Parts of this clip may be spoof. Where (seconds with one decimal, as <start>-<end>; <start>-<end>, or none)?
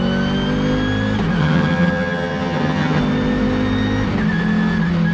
1.4-3.0